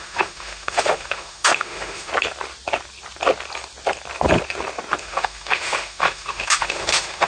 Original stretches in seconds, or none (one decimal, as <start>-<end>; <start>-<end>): 2.1-5.0